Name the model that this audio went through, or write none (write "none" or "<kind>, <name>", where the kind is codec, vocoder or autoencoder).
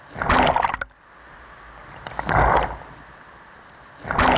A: none